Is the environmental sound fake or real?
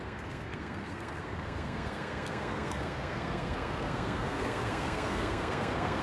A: fake